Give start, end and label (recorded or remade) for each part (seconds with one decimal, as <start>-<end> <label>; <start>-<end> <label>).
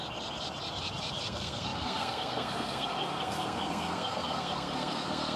0.0-1.2 recorded; 1.2-5.4 remade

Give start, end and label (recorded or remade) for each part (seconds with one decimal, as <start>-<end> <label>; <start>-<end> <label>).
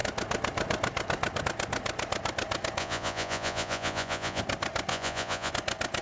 0.0-2.8 recorded; 2.8-4.4 remade; 4.4-4.9 recorded; 4.9-5.5 remade; 5.5-6.0 recorded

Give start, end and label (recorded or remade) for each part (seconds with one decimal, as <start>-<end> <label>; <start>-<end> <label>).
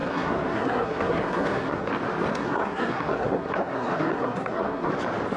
0.0-1.9 remade; 1.9-2.3 recorded; 2.3-4.9 remade; 4.9-5.4 recorded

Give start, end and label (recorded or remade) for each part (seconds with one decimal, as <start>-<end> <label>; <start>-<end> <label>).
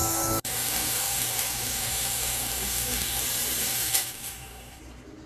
0.0-3.2 remade; 3.2-3.6 recorded; 3.6-4.8 remade; 4.8-5.3 recorded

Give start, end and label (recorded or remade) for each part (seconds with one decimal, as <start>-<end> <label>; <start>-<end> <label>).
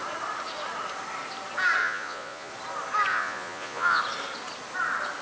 0.0-1.8 recorded; 1.8-2.5 remade; 2.5-3.1 recorded; 3.1-4.0 remade; 4.0-5.2 recorded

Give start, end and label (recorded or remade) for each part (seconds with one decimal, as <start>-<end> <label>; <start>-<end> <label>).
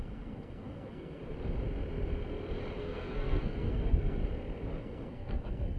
0.0-1.2 remade; 1.2-2.8 recorded; 2.8-4.2 remade; 4.2-4.8 recorded; 4.8-5.8 remade